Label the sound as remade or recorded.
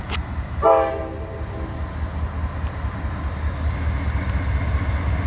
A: recorded